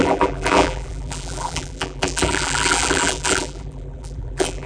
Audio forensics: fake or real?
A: fake